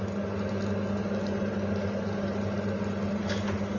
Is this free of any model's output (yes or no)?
yes